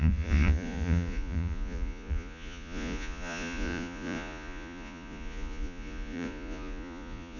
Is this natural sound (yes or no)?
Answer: no